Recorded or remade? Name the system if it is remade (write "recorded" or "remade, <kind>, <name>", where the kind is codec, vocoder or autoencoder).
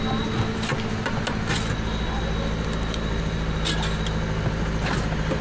recorded